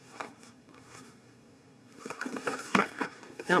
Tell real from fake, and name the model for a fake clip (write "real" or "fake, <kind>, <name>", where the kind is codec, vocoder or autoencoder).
fake, codec, SNAC